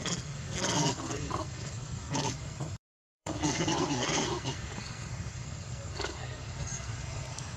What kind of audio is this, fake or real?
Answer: fake